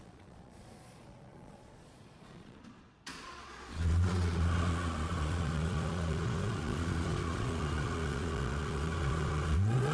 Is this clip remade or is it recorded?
remade